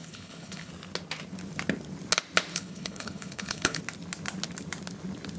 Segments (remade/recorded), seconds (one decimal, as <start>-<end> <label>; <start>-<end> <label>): 0.0-0.7 remade; 0.7-2.5 recorded; 2.5-3.8 remade; 3.8-5.4 recorded